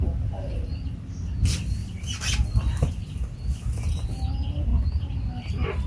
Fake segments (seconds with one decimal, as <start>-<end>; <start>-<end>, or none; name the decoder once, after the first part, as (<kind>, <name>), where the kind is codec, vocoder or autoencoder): 1.8-2.9 (vocoder, BigVGAN v2)

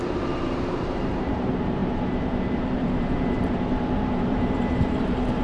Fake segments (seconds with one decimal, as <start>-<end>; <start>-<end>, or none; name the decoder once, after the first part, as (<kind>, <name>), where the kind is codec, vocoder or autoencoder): 0.0-5.4 (vocoder, BigVGAN v2)